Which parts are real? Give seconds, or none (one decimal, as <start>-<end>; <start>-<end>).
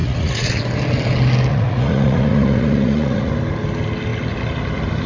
0.6-1.5; 3.3-5.1